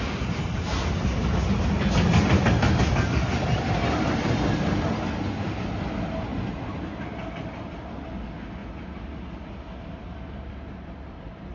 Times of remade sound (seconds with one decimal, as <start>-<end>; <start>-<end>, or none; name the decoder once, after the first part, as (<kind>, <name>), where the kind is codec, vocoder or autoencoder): none